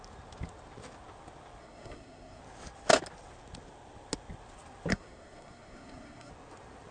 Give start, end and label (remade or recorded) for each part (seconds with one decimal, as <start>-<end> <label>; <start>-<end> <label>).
0.0-1.6 recorded; 1.6-2.4 remade; 2.4-4.9 recorded; 4.9-6.3 remade; 6.3-6.9 recorded